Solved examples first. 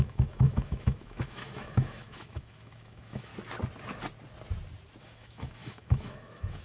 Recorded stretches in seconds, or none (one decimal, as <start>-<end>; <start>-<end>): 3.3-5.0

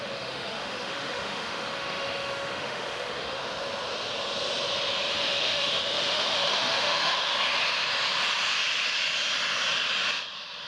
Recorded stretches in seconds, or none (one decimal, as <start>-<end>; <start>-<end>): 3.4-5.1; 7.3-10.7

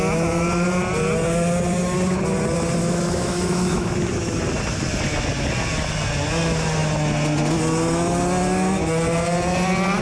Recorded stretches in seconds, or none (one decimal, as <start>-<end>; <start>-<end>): 0.0-2.8; 3.9-10.0